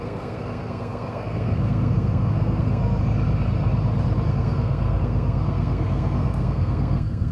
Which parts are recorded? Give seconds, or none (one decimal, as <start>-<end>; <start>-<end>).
3.0-4.3